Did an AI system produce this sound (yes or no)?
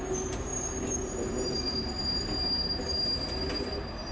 no